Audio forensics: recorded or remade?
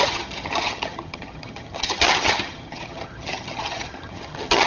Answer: remade